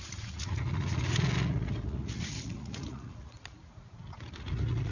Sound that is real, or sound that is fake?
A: fake